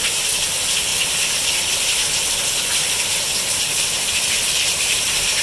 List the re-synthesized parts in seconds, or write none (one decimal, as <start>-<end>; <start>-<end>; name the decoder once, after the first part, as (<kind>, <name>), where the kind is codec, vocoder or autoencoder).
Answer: 0.0-0.9 (vocoder, BigVGAN v2); 4.1-5.4